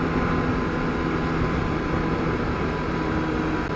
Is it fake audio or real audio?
real